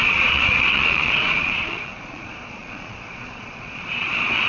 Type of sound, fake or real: fake